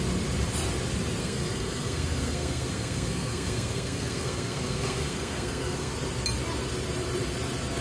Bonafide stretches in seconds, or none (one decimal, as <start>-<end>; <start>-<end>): 0.0-1.2; 5.9-7.8